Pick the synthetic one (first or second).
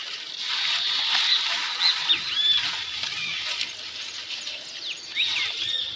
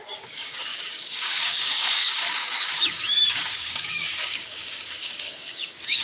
second